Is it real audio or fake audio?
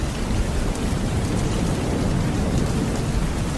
real